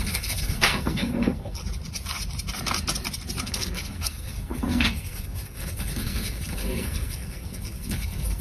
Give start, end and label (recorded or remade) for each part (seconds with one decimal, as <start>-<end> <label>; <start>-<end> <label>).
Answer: 0.0-1.6 remade; 1.6-3.4 recorded; 3.4-8.4 remade